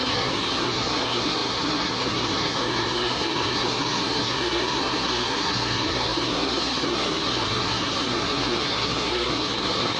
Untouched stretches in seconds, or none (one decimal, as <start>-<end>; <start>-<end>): none